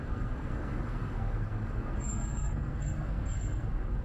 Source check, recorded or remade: remade